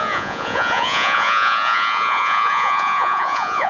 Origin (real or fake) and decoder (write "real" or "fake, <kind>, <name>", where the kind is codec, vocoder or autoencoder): fake, vocoder, Vocos